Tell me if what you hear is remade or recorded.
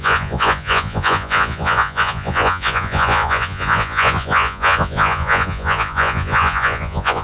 remade